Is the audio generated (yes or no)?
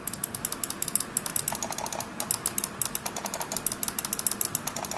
no